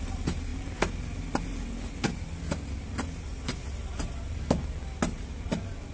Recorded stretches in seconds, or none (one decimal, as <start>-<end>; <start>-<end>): 0.0-5.9